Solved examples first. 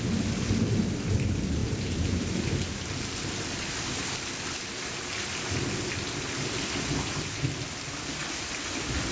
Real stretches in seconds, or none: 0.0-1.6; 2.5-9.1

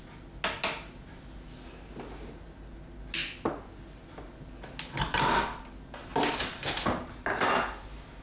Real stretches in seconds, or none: 0.0-8.2

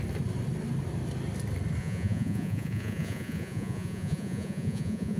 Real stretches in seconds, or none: 0.0-1.8

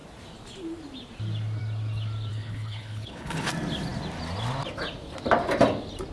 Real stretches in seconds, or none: 0.0-2.3; 3.5-6.1

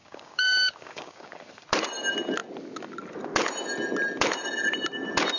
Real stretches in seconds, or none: 1.4-5.4